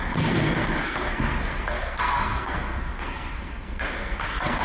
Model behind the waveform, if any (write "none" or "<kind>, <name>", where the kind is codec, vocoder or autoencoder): codec, SNAC